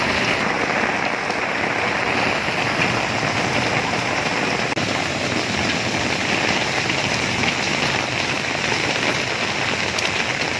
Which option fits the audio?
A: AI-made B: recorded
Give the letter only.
B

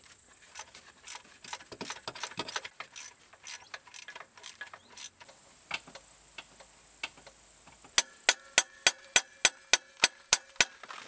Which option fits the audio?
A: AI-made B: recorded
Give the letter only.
B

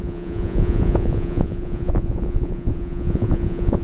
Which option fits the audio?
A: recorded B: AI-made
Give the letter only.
B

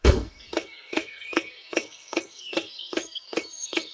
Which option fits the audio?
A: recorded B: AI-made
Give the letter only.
B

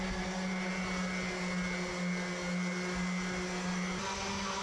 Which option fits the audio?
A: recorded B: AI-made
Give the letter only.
A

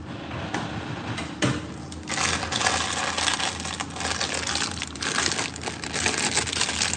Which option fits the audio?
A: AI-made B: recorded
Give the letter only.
B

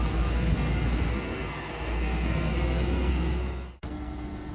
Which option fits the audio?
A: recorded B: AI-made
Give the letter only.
B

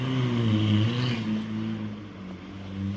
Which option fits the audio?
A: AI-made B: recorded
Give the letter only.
B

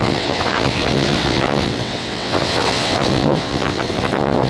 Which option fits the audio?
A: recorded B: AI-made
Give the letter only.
B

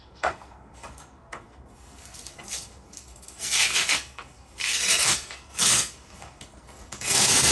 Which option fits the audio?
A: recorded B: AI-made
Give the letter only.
B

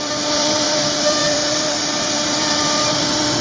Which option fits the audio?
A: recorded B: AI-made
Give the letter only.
B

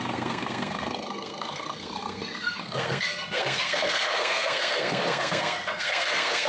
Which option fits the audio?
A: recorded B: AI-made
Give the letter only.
B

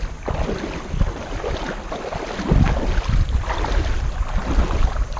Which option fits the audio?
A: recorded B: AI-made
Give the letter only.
A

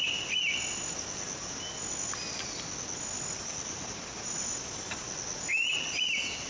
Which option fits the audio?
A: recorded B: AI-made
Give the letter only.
A